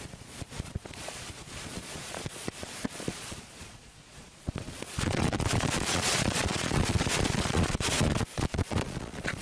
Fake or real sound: fake